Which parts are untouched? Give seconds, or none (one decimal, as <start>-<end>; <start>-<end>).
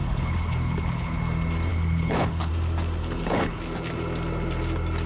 1.2-1.7; 2.5-3.0; 3.6-5.1